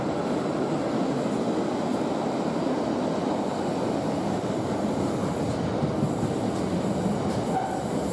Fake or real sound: real